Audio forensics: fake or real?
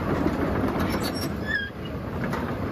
fake